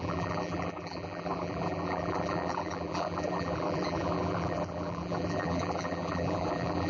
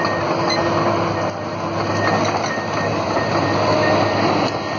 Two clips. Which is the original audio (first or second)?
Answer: second